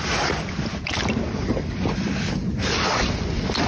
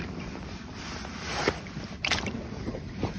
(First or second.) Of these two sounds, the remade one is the second